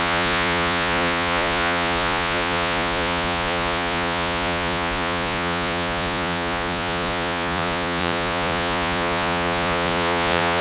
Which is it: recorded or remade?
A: remade